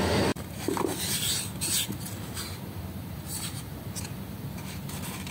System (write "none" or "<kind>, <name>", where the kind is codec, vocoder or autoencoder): none